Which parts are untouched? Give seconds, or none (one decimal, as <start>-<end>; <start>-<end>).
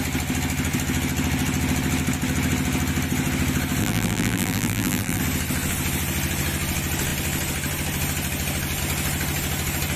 0.0-3.8; 5.2-10.0